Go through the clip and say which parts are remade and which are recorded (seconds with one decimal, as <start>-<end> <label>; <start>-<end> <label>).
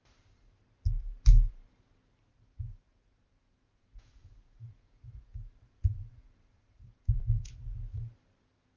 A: 0.0-2.3 recorded; 2.3-7.5 remade; 7.5-8.8 recorded